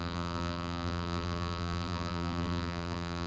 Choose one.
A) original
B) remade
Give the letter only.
B